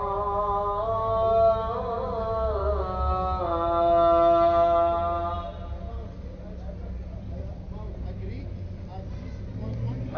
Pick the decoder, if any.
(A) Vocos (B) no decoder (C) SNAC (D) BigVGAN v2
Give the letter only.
B